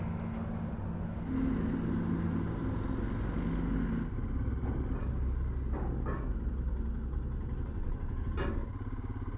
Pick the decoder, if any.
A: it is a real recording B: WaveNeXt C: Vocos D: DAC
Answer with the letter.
A